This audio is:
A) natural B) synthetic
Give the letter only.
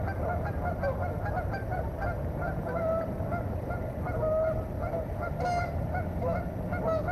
A